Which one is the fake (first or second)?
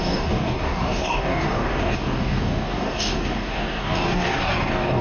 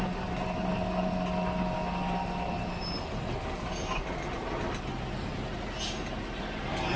first